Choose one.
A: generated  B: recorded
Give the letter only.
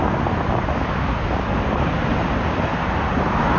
B